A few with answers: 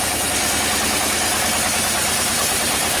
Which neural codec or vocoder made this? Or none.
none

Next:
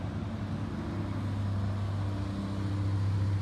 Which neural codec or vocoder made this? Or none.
none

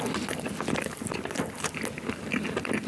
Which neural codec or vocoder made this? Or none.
none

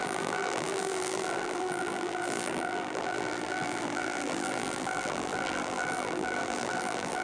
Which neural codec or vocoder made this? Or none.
vocoder, BigVGAN v2